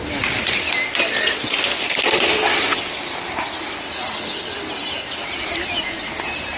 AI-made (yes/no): no